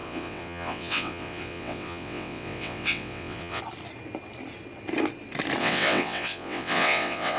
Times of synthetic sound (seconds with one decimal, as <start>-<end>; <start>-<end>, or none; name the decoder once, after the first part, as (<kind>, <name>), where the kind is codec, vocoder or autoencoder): 0.0-3.6 (vocoder, WaveNeXt); 5.6-7.4